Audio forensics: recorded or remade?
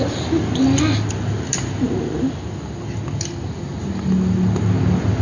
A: recorded